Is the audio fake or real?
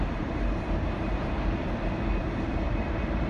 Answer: fake